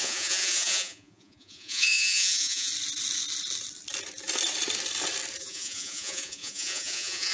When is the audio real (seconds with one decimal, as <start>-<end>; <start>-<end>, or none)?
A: 2.7-5.4

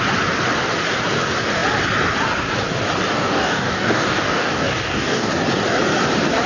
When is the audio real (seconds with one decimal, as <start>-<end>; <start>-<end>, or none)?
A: 0.0-3.1; 5.3-6.5

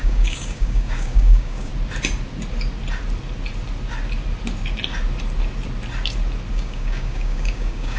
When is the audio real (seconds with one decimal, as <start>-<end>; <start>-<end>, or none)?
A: 1.7-6.5

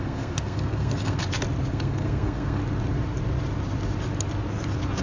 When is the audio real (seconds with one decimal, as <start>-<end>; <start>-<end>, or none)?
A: 1.2-1.7; 2.6-5.0

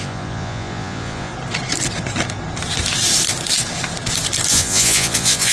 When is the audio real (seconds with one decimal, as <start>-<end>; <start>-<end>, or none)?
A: 1.3-4.5

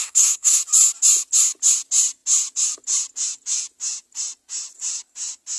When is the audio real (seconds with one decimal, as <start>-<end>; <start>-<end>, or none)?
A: 0.6-5.6

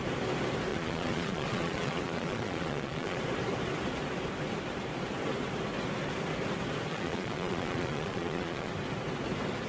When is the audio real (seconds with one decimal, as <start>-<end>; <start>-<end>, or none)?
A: 0.0-0.7; 3.2-6.9; 8.7-9.7

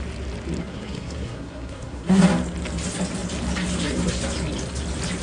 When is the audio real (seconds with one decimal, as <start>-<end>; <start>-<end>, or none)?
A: 0.0-0.6; 2.2-5.2